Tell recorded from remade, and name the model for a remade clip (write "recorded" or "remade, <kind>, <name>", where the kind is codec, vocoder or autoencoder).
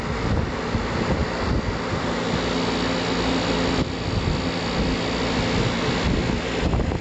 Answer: recorded